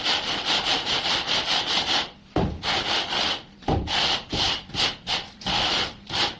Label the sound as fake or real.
real